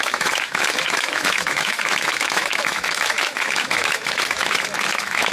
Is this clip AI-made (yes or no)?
yes